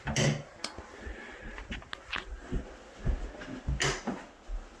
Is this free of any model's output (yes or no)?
yes